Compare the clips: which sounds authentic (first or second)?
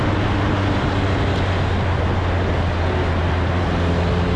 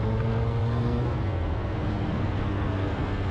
first